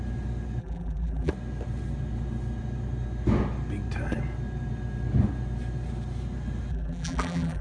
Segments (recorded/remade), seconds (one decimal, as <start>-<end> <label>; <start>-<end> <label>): 0.0-0.6 recorded; 0.6-1.3 remade; 1.3-6.7 recorded; 6.7-7.6 remade